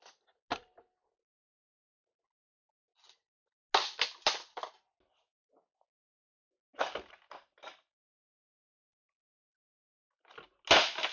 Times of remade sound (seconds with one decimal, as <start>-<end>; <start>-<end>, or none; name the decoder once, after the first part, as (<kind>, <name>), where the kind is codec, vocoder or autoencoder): none